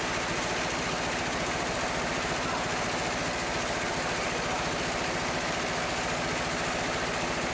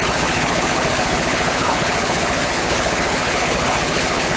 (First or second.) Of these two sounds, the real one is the first